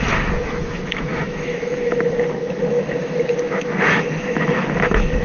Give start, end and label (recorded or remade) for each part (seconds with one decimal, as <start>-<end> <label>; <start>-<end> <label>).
0.0-5.2 remade